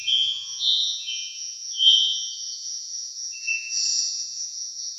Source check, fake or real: fake